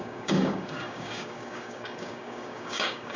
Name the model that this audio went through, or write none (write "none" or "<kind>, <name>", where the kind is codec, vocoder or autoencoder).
codec, DAC